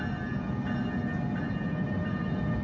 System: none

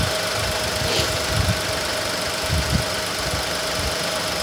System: none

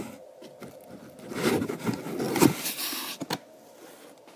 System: none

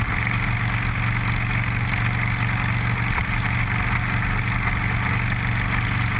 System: none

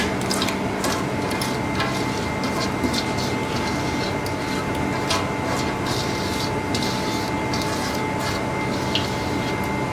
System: none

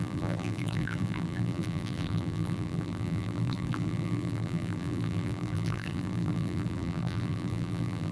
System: vocoder, BigVGAN v2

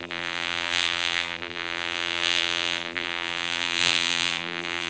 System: vocoder, BigVGAN v2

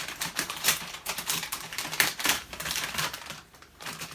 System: vocoder, BigVGAN v2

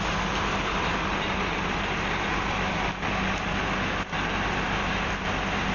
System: none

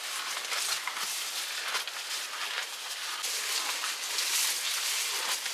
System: none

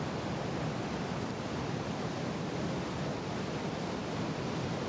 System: none